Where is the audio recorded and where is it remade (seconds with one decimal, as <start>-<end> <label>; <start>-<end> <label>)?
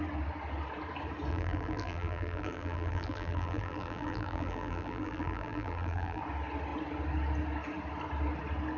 0.0-1.3 recorded; 1.3-6.2 remade; 6.2-8.8 recorded